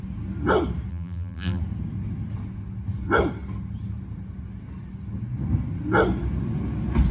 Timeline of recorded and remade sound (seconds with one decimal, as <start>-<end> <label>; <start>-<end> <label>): 0.0-0.9 recorded; 0.9-1.6 remade; 1.6-7.1 recorded